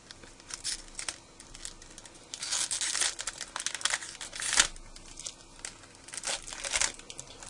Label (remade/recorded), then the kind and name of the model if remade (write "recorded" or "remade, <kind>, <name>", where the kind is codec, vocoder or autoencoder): recorded